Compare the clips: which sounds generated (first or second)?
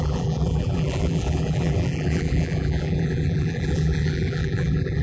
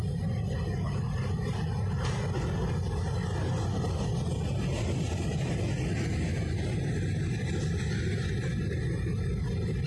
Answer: first